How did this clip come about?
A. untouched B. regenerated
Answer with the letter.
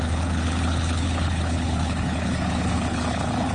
B